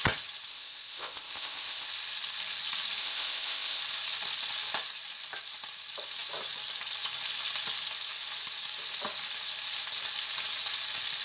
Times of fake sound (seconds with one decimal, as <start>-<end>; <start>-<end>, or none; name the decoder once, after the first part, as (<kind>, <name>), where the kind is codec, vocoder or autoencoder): 0.5-1.9 (codec, ZipCodec); 3.0-3.8